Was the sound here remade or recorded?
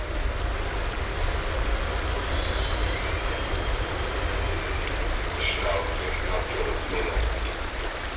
recorded